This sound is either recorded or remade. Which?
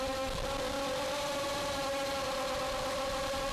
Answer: recorded